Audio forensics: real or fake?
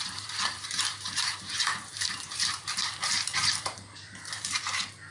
fake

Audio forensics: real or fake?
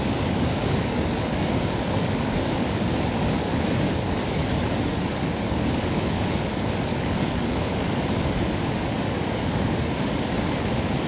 fake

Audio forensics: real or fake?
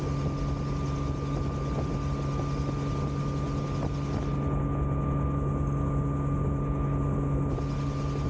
real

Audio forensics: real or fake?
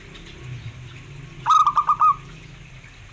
real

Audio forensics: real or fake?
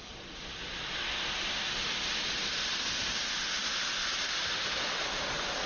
real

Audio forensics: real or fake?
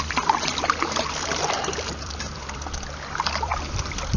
fake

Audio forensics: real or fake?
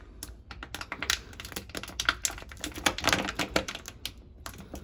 real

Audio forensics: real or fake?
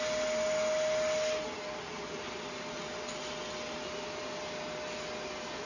real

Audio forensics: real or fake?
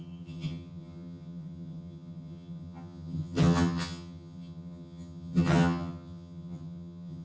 fake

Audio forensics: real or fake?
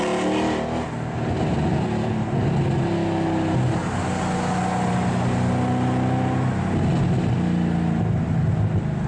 real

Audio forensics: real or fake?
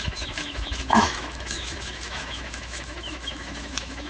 fake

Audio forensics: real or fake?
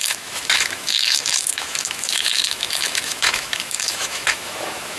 fake